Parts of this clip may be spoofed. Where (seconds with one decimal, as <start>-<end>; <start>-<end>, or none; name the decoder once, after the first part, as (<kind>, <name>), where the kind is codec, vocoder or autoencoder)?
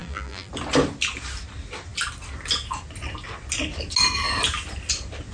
0.0-0.5 (vocoder, BigVGAN v2)